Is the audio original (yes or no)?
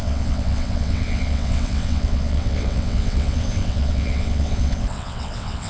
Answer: no